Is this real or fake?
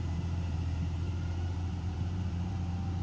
fake